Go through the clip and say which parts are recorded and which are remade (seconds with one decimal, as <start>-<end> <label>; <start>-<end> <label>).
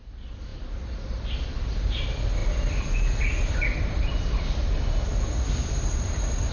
0.0-6.5 recorded